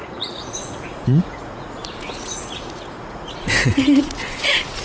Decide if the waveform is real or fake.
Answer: fake